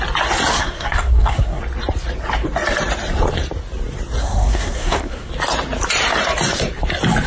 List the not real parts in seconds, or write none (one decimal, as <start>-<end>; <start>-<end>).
0.5-1.6; 4.2-5.3